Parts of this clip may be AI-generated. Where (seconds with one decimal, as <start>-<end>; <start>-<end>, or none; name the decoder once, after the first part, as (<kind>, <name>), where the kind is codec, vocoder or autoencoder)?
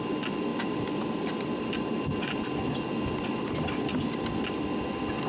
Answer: none